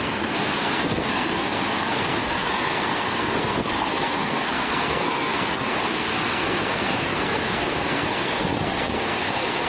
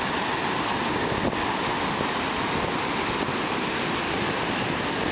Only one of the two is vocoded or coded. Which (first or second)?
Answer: first